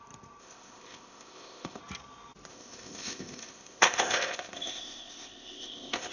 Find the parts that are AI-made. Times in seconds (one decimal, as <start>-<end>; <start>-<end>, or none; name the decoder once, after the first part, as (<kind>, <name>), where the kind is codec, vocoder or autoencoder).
0.4-1.8 (codec, ZipCodec); 2.5-6.1